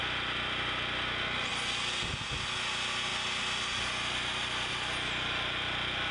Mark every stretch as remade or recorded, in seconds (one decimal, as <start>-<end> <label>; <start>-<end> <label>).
0.0-6.1 recorded